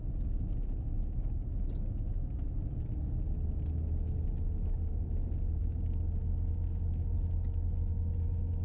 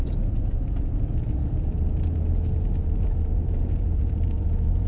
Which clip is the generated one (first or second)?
second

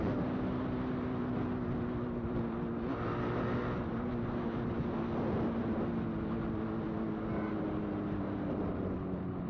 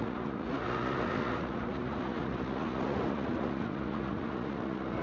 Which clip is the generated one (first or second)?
second